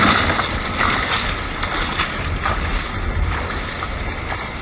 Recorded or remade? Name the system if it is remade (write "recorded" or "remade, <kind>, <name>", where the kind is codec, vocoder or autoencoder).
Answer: recorded